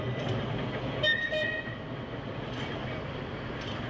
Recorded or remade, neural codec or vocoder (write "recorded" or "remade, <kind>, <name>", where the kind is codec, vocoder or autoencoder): recorded